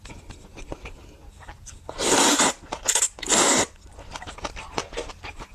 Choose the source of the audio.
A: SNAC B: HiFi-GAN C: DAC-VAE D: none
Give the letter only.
D